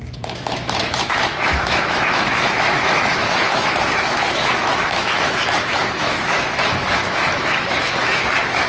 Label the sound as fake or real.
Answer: fake